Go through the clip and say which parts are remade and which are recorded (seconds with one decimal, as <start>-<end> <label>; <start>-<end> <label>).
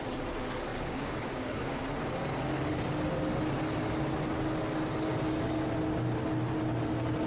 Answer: 0.0-0.7 recorded; 0.7-1.8 remade; 1.8-7.3 recorded